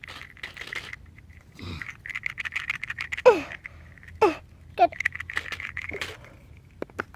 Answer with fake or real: real